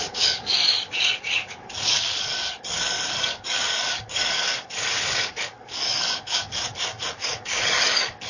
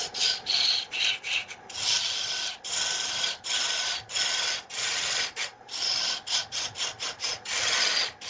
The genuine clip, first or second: second